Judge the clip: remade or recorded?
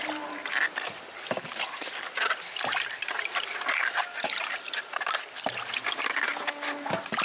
recorded